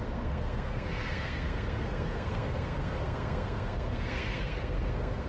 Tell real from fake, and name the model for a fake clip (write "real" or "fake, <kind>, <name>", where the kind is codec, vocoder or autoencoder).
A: fake, codec, SNAC